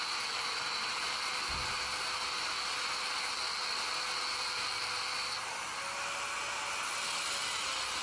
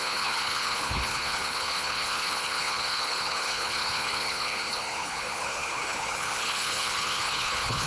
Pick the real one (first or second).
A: first